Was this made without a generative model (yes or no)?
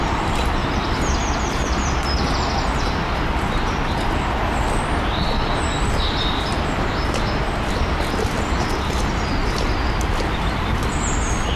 yes